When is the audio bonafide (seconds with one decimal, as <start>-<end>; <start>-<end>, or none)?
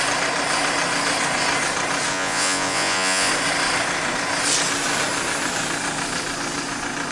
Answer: 0.0-2.1; 3.3-7.1